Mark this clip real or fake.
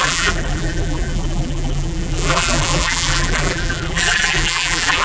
fake